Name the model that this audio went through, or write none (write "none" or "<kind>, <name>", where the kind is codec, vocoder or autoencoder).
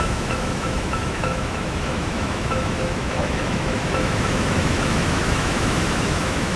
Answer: autoencoder, DAC-VAE